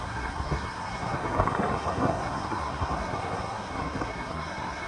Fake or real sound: fake